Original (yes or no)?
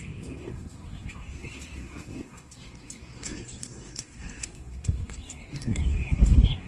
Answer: no